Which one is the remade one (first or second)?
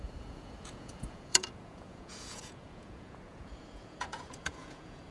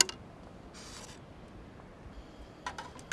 first